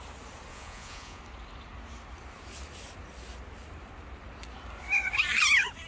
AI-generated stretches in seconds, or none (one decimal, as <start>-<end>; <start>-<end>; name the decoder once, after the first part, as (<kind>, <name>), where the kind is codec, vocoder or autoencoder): 0.5-1.2 (vocoder, Vocos)